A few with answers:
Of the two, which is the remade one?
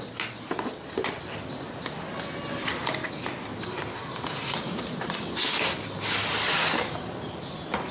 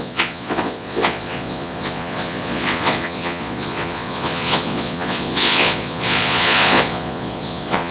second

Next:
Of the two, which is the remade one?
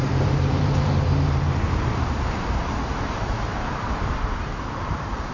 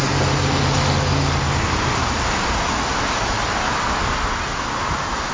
first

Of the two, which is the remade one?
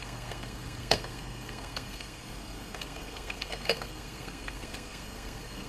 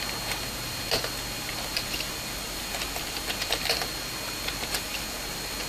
first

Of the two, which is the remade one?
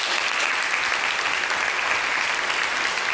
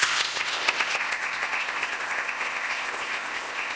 second